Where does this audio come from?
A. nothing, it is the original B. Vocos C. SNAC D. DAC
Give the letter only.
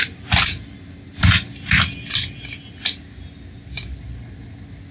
A